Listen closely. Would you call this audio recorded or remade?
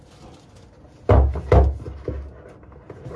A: recorded